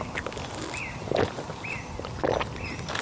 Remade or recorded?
recorded